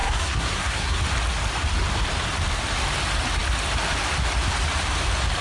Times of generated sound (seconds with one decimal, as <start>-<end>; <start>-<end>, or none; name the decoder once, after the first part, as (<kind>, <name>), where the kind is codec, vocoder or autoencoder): 0.0-1.0 (codec, SNAC)